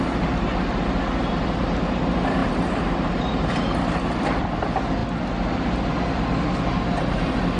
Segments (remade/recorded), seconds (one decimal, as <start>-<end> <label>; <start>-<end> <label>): 0.0-2.4 recorded; 2.4-3.6 remade; 3.6-7.6 recorded